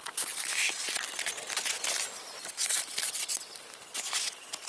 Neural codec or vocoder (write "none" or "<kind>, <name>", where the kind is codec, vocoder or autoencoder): none